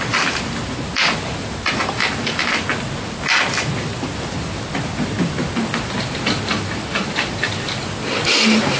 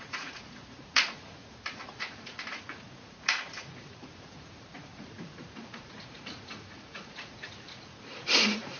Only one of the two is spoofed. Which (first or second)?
second